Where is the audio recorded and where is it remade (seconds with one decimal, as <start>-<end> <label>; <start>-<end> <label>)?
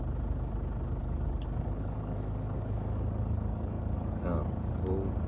0.0-1.0 recorded; 1.0-4.2 remade; 4.2-5.3 recorded